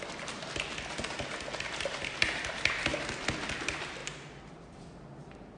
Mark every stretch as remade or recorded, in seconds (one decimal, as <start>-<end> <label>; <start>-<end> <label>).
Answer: 0.0-5.6 recorded